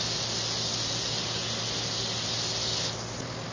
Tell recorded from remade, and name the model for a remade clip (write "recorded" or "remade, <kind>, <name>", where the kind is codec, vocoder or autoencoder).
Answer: recorded